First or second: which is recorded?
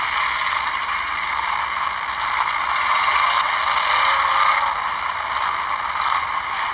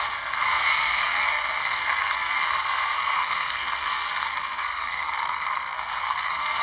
first